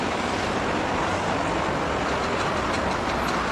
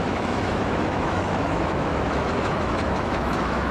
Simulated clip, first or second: second